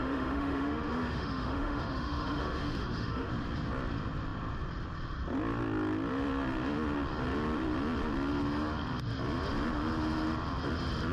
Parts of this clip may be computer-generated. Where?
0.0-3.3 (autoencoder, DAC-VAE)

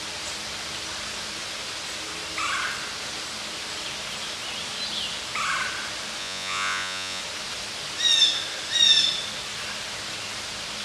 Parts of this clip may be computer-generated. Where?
6.2-7.2 (vocoder, Vocos)

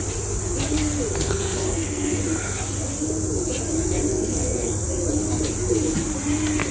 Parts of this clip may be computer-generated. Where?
1.1-2.2 (codec, SNAC); 4.1-4.7

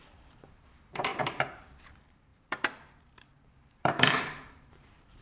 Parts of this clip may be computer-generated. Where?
0.0-5.2 (vocoder, BigVGAN v2)

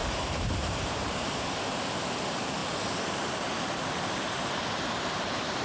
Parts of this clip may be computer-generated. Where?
0.0-1.8 (vocoder, BigVGAN v2)

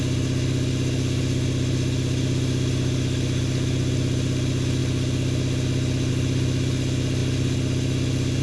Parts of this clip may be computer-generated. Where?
none

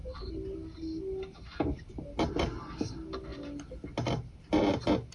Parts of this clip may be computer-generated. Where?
none

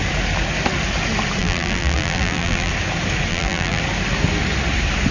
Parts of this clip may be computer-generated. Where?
1.4-2.7 (vocoder, BigVGAN v2); 3.3-3.8